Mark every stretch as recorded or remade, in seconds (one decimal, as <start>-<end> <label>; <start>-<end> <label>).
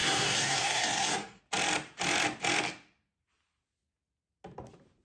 0.0-1.4 remade; 1.4-5.0 recorded